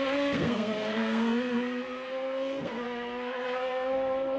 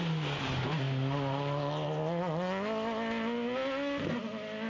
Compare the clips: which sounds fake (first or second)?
first